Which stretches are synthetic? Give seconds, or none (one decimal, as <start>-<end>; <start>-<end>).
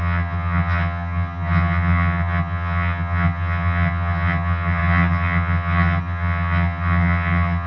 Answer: 0.0-7.7